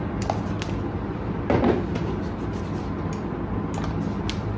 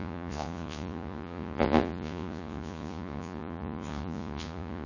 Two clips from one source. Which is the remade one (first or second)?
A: second